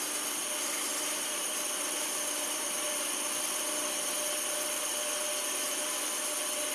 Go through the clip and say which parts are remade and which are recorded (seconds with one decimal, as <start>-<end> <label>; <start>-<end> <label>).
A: 0.0-0.9 recorded; 0.9-2.6 remade; 2.6-6.7 recorded